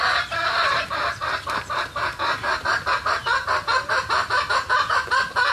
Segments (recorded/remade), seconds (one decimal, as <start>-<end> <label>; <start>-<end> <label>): 0.0-5.5 recorded